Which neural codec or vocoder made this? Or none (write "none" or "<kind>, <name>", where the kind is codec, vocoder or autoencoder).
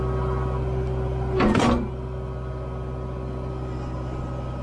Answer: none